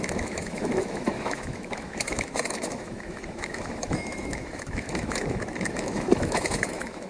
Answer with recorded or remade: remade